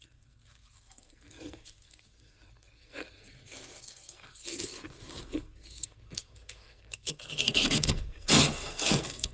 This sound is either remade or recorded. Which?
remade